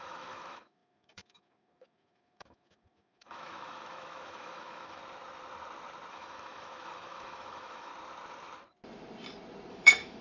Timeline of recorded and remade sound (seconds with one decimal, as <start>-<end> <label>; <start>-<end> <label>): 0.0-5.0 remade; 5.0-6.1 recorded; 6.1-7.9 remade; 7.9-9.7 recorded; 9.7-10.2 remade